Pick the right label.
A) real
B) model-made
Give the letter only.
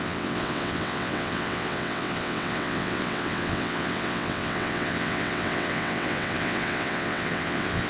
B